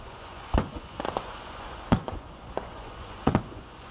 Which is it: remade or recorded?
remade